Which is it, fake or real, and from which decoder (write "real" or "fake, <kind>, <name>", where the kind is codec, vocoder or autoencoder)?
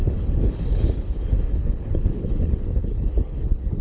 fake, codec, HILCodec